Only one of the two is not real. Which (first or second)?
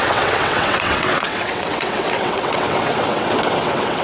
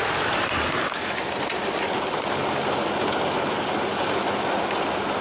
first